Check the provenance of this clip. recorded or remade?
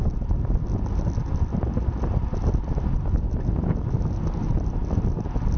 recorded